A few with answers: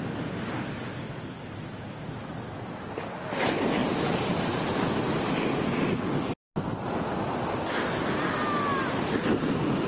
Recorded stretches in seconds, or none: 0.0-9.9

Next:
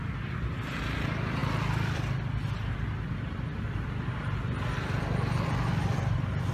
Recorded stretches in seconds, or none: 0.0-6.5

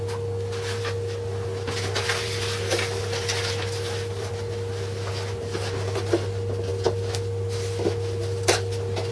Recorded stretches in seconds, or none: 0.0-9.1

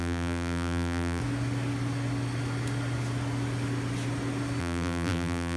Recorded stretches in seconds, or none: 1.2-4.6

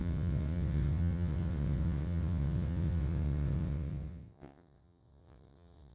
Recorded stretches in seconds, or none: none

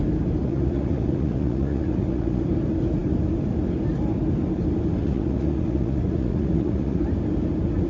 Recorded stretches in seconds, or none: 0.0-0.4; 2.4-5.0; 7.0-7.9

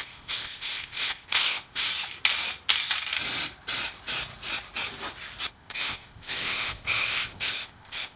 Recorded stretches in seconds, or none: 1.9-5.5